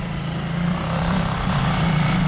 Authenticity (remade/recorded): remade